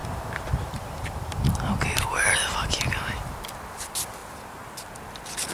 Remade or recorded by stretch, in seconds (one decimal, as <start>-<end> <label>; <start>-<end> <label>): 0.0-3.3 remade; 3.3-5.5 recorded